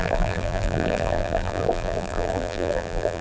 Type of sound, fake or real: fake